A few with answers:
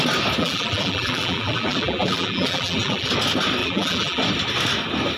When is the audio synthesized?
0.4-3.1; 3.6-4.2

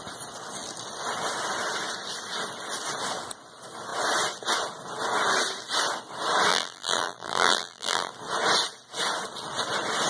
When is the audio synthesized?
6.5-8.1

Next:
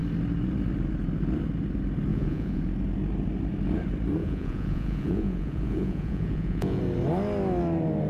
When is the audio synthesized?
2.1-2.6; 4.2-6.8

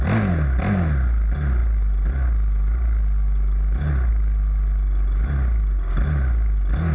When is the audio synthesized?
none